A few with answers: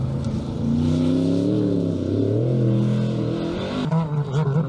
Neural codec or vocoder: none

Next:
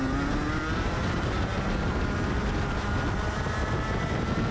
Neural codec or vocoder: none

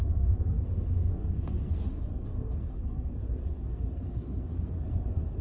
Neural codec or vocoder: codec, SNAC